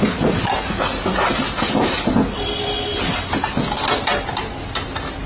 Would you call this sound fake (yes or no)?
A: no